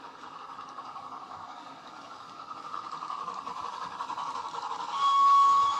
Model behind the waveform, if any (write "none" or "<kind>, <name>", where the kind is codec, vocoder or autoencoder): codec, DAC